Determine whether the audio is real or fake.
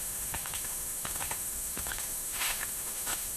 fake